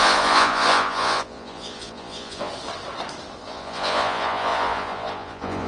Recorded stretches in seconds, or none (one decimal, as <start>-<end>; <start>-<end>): 2.5-3.4